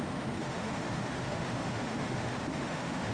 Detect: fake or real fake